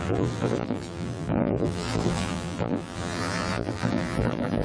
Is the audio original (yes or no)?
no